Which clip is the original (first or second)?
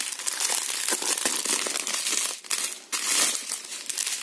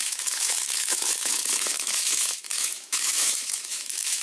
first